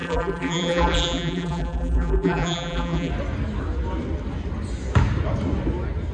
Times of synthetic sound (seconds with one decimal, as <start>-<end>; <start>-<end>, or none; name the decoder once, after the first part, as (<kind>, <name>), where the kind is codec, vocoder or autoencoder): 0.0-3.1 (vocoder, BigVGAN v2)

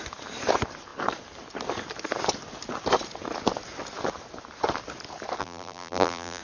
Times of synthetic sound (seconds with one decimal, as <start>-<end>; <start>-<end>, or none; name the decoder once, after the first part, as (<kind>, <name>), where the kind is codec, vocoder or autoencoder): 5.4-6.4 (vocoder, BigVGAN v2)

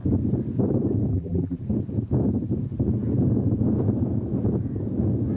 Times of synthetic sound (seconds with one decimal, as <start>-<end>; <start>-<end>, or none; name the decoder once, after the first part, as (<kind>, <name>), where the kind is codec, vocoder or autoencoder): 1.1-1.6 (vocoder, BigVGAN v2)